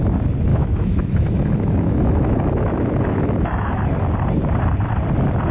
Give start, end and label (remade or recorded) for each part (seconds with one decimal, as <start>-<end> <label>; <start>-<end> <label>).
0.0-0.5 recorded; 0.5-3.8 remade; 3.8-5.5 recorded